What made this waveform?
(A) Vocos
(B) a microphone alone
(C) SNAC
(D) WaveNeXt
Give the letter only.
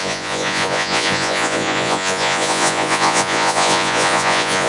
A